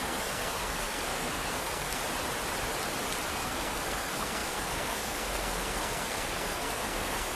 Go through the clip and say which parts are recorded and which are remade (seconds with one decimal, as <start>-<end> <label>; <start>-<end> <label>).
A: 0.0-2.0 remade; 2.0-3.3 recorded; 3.3-7.4 remade